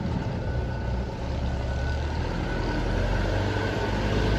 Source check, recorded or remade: recorded